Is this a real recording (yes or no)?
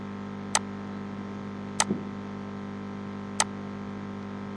yes